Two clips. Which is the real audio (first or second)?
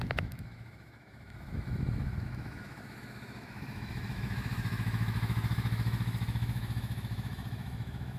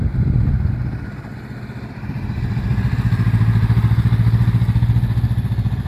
second